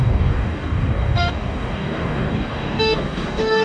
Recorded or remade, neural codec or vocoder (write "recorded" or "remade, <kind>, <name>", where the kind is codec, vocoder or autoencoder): remade, codec, DAC